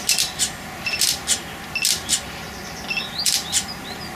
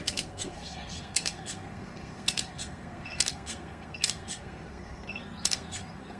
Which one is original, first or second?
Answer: first